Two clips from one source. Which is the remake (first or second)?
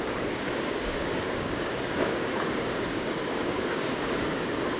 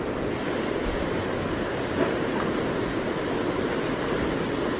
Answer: first